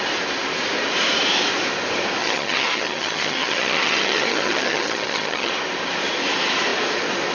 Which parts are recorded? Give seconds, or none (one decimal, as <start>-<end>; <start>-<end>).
0.0-2.2; 5.5-7.3